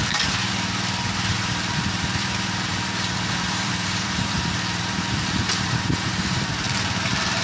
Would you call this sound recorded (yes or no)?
no